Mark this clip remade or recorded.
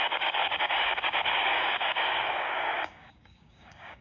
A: remade